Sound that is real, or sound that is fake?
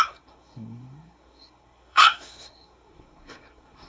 fake